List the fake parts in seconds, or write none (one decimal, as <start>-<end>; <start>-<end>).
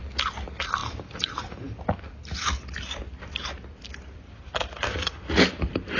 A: none